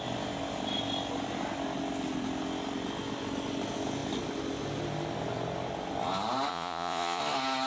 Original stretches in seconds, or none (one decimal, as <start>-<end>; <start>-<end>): 0.0-6.5; 7.2-7.7